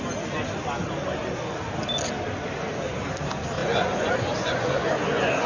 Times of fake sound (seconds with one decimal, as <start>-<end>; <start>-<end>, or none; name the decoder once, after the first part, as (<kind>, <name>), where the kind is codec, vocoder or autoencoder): 3.6-5.5 (vocoder, Vocos)